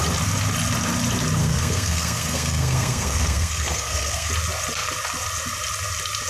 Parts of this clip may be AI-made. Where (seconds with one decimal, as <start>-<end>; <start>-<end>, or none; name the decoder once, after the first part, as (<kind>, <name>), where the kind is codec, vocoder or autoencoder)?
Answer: 1.4-4.3 (codec, SNAC)